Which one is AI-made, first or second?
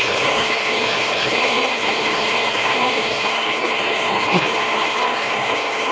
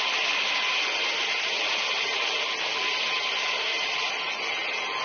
first